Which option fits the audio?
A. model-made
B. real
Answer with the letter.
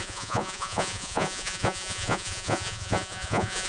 A